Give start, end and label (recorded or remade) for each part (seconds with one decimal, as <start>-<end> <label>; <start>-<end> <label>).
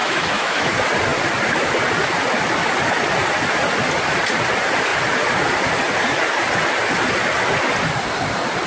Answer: 0.0-0.7 remade; 0.7-8.7 recorded